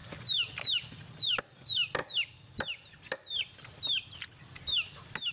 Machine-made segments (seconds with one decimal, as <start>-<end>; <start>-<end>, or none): none